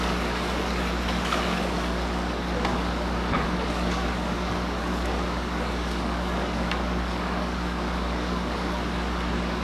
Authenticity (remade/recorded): remade